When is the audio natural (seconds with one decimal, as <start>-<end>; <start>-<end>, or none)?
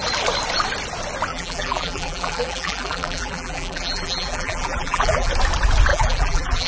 0.0-1.3; 5.3-5.9